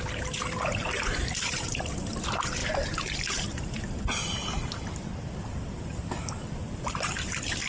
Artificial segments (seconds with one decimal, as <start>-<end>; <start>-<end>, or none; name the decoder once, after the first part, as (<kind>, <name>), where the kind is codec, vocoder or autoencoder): none